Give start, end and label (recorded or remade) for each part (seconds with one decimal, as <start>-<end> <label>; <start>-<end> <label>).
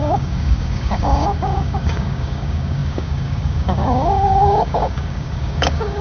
0.0-6.0 remade